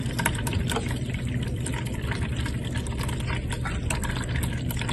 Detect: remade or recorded recorded